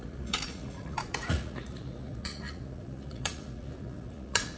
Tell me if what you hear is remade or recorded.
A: remade